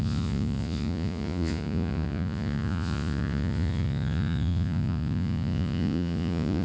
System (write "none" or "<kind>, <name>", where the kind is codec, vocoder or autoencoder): vocoder, Vocos